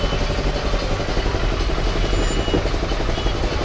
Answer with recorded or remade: recorded